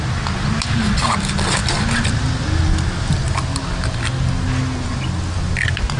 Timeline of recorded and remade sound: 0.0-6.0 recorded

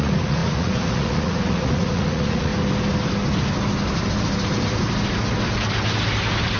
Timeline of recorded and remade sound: 0.0-2.5 remade; 2.5-6.6 recorded

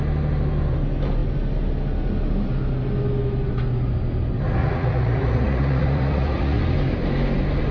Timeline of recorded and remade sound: 0.0-4.6 recorded; 4.6-6.6 remade; 6.6-7.7 recorded

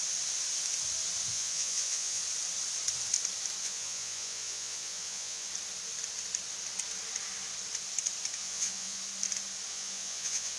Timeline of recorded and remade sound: 0.0-1.3 recorded; 1.3-2.2 remade; 2.2-3.6 recorded; 3.6-5.5 remade; 5.5-8.4 recorded; 8.4-9.0 remade; 9.0-9.7 recorded; 9.7-10.6 remade

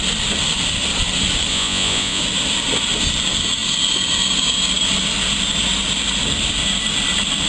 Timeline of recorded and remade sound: 0.0-1.5 recorded; 1.5-2.2 remade; 2.2-7.5 recorded

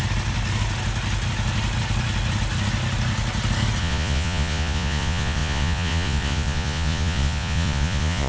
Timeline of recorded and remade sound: 0.0-3.8 recorded; 3.8-8.3 remade

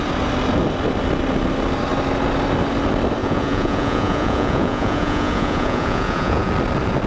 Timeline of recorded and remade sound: 0.0-3.2 recorded; 3.2-6.5 remade; 6.5-7.1 recorded